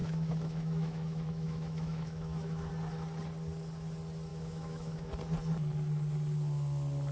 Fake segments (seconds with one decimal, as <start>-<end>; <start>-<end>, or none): 0.0-2.7; 4.3-5.1